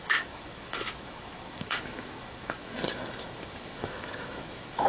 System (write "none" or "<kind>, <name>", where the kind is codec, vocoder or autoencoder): autoencoder, DAC-VAE